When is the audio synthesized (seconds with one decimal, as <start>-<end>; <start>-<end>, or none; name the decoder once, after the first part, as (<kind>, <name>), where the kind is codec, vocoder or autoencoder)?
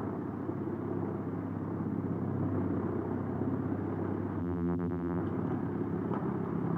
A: 4.4-5.2 (vocoder, BigVGAN v2)